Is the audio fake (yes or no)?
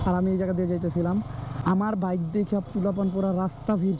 no